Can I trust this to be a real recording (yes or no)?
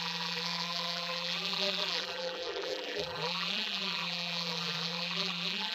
no